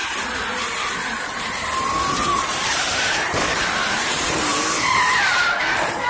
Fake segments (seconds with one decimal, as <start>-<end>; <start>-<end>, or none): 2.1-4.5